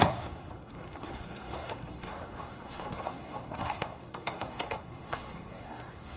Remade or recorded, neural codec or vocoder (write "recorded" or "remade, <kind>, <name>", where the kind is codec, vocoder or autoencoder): remade, codec, SNAC